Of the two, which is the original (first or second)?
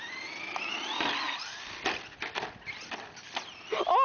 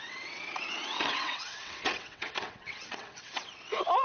first